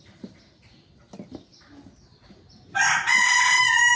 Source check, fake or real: real